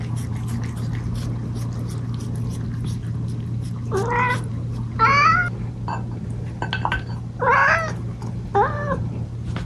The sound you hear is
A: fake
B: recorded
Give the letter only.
B